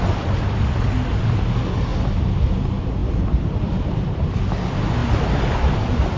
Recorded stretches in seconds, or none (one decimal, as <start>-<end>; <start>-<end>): 0.0-3.0; 4.4-6.2